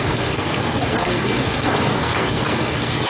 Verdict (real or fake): fake